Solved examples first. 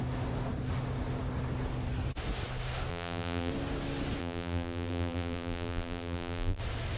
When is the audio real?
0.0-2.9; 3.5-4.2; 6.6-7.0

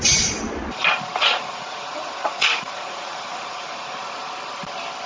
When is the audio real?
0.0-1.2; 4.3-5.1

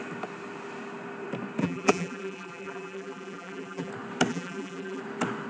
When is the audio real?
0.0-1.6; 3.9-4.3; 5.0-5.5